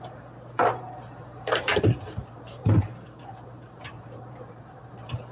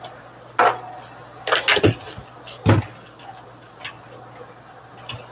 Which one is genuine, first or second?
second